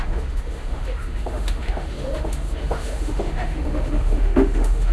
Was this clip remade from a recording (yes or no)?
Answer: yes